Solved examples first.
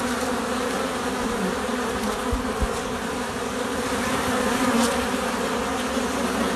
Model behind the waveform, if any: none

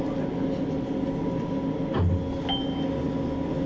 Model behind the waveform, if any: none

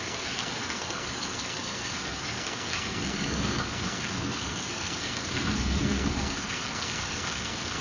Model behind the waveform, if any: codec, SNAC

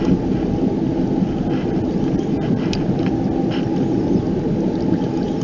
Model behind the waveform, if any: none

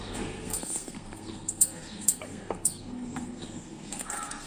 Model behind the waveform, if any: codec, SNAC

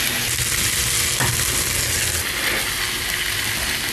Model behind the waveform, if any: none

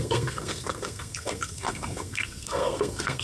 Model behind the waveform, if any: codec, SNAC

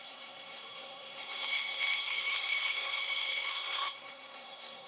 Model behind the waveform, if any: codec, SNAC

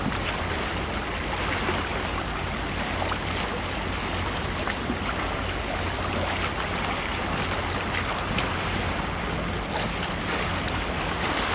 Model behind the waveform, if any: none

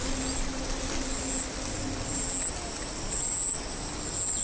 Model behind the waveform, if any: none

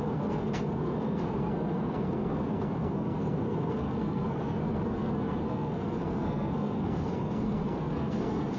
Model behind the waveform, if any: codec, SNAC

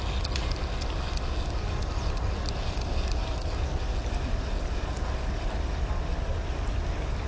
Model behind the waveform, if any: none